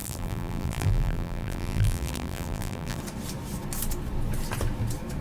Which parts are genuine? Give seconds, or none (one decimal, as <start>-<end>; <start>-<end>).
3.0-5.2